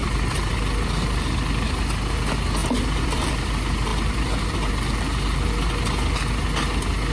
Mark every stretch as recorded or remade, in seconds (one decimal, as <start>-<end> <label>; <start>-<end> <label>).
0.0-2.6 recorded; 2.6-3.3 remade; 3.3-3.9 recorded; 3.9-4.7 remade; 4.7-7.1 recorded